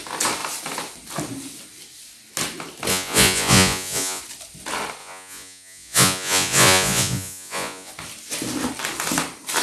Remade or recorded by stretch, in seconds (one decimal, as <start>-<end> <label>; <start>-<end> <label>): 0.0-2.9 recorded; 2.9-4.2 remade; 4.2-5.0 recorded; 5.0-7.9 remade; 7.9-9.6 recorded